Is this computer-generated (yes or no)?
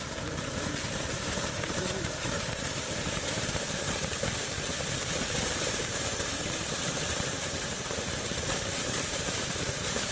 yes